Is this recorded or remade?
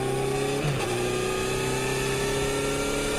recorded